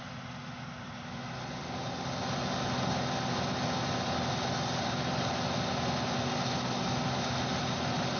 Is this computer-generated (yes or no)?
no